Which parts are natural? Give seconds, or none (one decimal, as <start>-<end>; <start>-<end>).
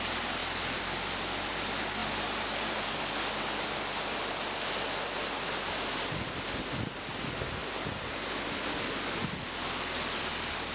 0.0-10.7